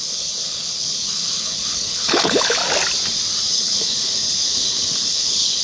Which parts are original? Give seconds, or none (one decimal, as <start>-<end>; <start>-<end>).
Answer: 2.6-3.5